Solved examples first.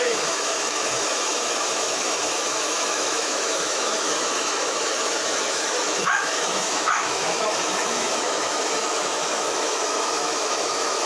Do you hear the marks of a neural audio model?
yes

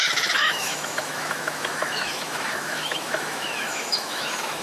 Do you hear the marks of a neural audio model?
yes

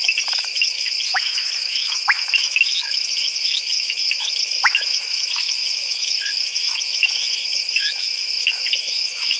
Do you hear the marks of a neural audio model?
yes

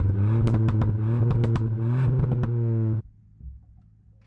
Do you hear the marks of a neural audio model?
no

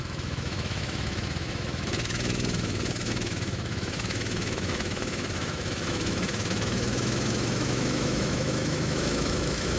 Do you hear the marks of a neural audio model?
yes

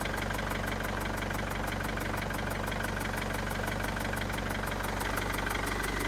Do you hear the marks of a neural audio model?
no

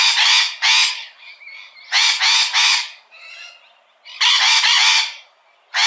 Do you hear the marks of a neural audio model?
no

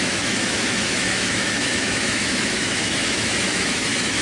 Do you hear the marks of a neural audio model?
yes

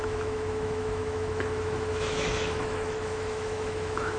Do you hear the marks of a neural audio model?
yes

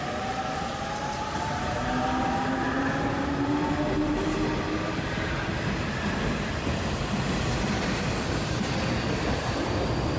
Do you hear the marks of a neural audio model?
no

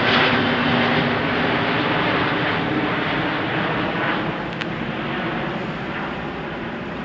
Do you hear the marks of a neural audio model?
no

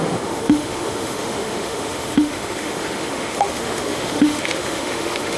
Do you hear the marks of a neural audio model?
yes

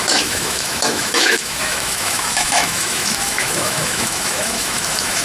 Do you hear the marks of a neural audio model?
yes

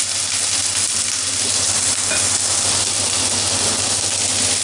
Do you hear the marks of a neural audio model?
no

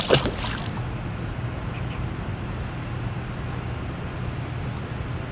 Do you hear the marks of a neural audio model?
no